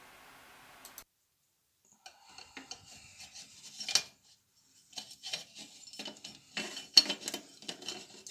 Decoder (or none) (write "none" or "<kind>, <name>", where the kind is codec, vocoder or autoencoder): none